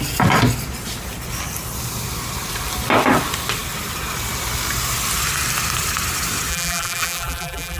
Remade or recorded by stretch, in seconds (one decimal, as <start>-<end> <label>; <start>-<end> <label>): 0.0-6.5 recorded; 6.5-7.8 remade